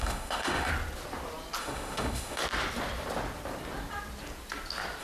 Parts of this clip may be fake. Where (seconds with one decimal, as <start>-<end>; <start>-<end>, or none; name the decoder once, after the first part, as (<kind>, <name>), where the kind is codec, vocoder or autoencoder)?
0.0-0.7 (autoencoder, DAC-VAE); 1.6-2.4